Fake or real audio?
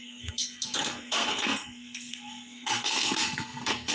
fake